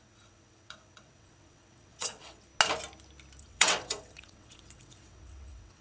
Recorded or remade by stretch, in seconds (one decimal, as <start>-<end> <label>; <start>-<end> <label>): 0.0-2.5 remade; 2.5-3.4 recorded; 3.4-5.8 remade